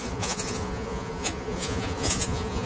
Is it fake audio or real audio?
fake